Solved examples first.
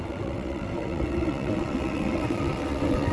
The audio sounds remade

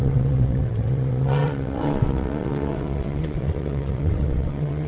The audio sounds remade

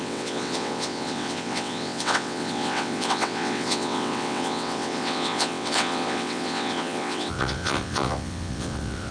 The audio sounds remade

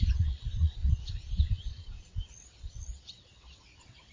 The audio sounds remade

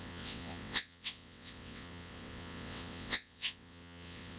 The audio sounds remade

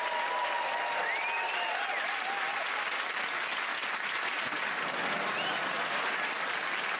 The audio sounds recorded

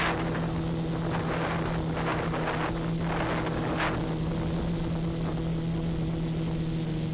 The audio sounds recorded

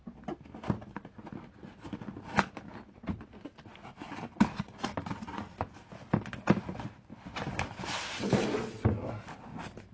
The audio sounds recorded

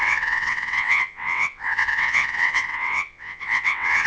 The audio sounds remade